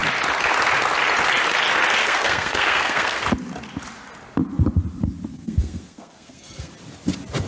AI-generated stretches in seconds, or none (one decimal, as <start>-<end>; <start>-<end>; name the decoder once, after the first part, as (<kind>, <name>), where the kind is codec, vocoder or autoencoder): 2.0-3.2 (codec, SNAC); 5.3-6.7